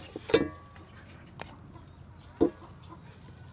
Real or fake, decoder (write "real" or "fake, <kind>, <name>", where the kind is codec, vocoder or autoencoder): real